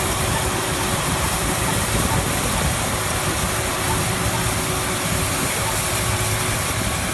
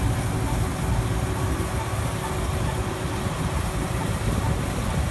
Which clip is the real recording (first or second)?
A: second